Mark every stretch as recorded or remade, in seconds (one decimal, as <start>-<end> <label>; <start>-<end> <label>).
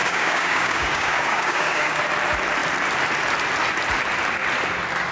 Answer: 0.0-2.0 remade; 2.0-5.1 recorded